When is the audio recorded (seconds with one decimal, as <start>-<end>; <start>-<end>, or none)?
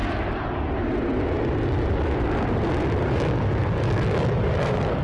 0.0-3.0